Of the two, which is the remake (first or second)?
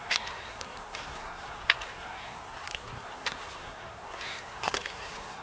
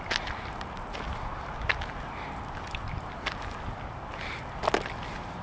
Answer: first